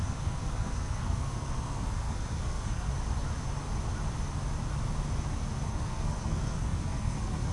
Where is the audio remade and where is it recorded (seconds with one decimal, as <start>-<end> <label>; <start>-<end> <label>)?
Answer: 0.0-2.9 remade; 2.9-5.7 recorded; 5.7-7.5 remade